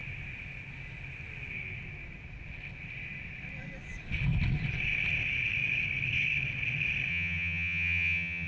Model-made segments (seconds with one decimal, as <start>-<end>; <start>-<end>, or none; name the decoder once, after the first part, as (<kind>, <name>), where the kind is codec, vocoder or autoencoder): 7.1-8.5 (vocoder, HiFi-GAN)